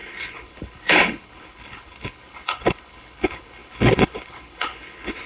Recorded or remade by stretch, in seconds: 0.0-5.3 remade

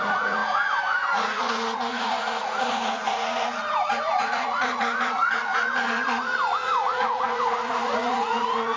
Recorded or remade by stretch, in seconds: 0.0-8.8 remade

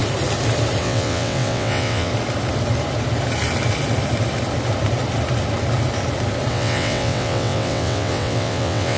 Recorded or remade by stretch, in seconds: 0.0-0.8 recorded; 0.8-2.1 remade; 2.1-6.5 recorded; 6.5-9.0 remade

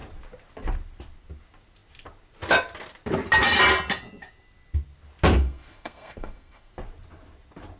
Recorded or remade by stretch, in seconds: 0.0-5.4 recorded; 5.4-6.7 remade; 6.7-7.8 recorded

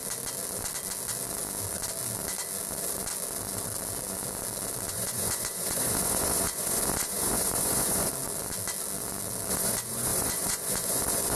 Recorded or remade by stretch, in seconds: 0.0-4.9 recorded; 4.9-8.1 remade; 8.1-9.5 recorded; 9.5-11.4 remade